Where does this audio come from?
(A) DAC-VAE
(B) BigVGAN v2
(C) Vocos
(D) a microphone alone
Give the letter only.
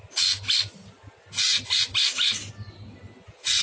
D